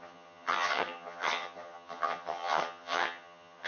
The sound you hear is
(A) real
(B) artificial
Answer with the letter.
B